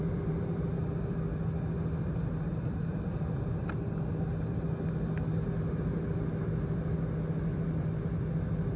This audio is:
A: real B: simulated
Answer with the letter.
A